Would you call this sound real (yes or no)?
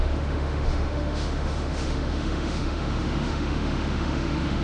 no